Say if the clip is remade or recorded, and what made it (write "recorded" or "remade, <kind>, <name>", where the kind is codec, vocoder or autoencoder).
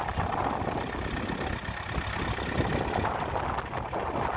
recorded